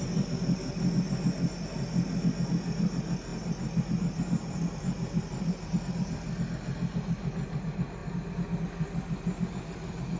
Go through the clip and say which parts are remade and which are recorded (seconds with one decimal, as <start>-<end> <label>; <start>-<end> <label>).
0.0-10.2 recorded